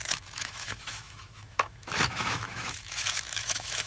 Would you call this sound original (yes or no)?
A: no